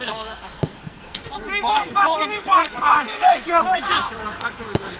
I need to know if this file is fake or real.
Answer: fake